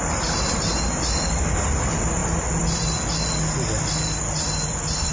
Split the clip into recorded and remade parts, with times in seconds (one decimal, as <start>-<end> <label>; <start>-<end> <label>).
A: 0.0-5.1 recorded

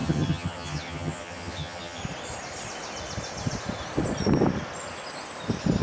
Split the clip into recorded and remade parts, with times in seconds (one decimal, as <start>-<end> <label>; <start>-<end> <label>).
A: 0.0-2.0 remade; 2.0-5.8 recorded

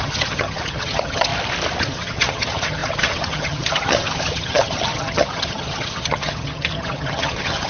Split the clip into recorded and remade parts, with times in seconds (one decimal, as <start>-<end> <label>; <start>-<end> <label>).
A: 0.0-1.3 remade; 1.3-1.8 recorded; 1.8-7.7 remade

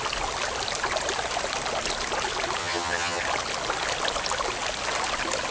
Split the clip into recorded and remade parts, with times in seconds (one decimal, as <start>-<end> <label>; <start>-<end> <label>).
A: 0.0-2.6 recorded; 2.6-3.2 remade; 3.2-5.5 recorded

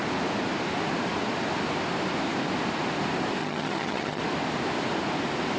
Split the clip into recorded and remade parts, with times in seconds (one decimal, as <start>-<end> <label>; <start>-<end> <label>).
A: 0.0-3.4 recorded; 3.4-4.2 remade; 4.2-5.6 recorded